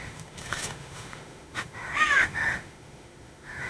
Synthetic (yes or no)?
yes